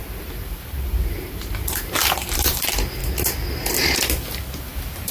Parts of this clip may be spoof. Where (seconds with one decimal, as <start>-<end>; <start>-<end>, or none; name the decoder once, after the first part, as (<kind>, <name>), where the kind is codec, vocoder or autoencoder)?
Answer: 0.0-3.0 (vocoder, BigVGAN v2); 4.6-5.1